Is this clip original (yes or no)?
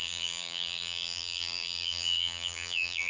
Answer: no